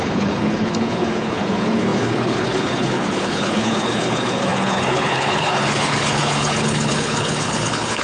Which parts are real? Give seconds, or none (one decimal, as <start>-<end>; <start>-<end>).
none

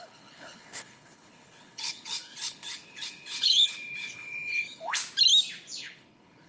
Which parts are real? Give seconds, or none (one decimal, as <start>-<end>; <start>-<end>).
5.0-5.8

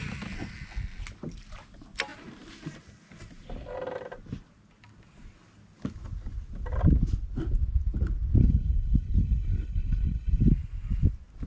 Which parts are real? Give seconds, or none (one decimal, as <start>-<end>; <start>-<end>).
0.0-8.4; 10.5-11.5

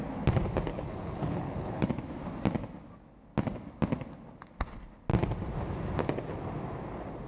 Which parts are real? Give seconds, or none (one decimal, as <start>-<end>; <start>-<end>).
0.0-0.7; 1.9-7.3